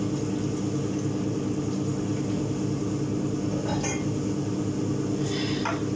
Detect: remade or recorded recorded